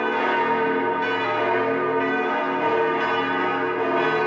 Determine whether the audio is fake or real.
real